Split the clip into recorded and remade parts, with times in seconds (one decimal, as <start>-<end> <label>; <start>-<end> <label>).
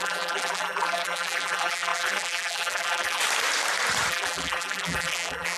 0.0-3.2 remade; 3.2-4.1 recorded; 4.1-5.6 remade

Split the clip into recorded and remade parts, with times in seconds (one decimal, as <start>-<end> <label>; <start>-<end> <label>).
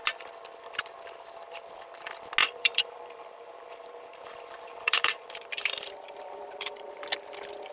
0.0-2.4 recorded; 2.4-7.0 remade; 7.0-7.7 recorded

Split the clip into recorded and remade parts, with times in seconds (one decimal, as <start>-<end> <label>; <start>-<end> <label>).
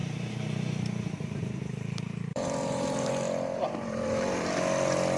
0.0-3.1 remade; 3.1-3.6 recorded; 3.6-4.5 remade; 4.5-5.2 recorded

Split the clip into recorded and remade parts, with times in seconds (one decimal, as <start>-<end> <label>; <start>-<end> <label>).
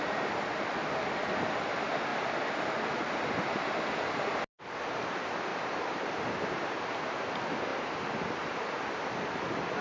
0.0-5.5 recorded; 5.5-6.9 remade; 6.9-7.7 recorded; 7.7-9.4 remade; 9.4-9.8 recorded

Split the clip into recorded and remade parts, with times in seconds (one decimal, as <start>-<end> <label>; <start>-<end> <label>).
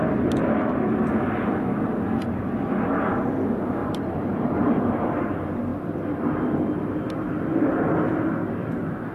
0.0-3.8 recorded; 3.8-4.8 remade; 4.8-5.7 recorded; 5.7-6.4 remade; 6.4-9.1 recorded